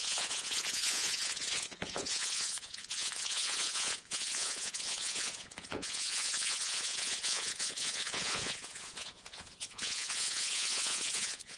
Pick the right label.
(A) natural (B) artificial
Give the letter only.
B